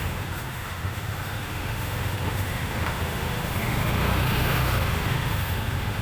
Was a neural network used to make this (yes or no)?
yes